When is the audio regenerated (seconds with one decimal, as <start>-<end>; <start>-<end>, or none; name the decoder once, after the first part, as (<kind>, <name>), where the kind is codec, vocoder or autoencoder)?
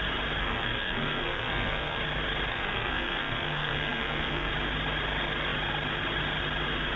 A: 0.4-2.0 (codec, SNAC); 2.5-4.5